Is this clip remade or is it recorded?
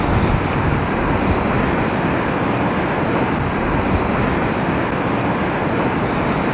recorded